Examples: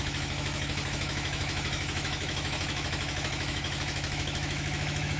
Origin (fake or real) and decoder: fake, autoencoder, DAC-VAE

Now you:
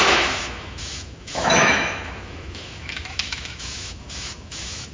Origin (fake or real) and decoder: fake, autoencoder, DAC-VAE